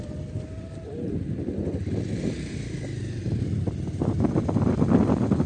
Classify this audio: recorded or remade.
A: recorded